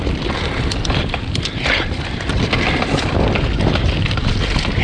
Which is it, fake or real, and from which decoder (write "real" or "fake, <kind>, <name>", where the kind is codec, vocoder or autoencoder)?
real